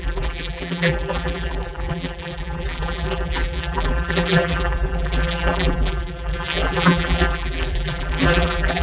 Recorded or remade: remade